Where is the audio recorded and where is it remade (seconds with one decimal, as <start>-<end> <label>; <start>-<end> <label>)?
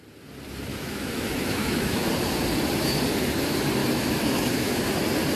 0.0-0.7 recorded; 0.7-2.1 remade; 2.1-3.8 recorded; 3.8-4.9 remade; 4.9-5.4 recorded